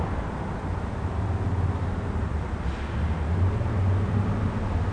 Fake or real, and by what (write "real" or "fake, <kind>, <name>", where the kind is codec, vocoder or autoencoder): real